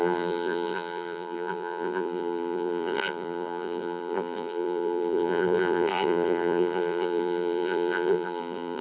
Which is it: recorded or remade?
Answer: remade